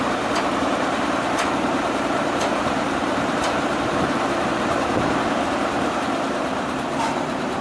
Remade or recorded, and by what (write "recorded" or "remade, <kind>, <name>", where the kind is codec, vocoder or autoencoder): remade, vocoder, BigVGAN v2